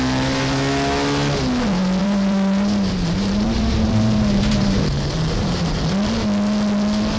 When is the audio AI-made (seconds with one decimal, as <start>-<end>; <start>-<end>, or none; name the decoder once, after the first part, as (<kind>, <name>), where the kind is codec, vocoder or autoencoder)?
2.0-5.9 (vocoder, BigVGAN v2)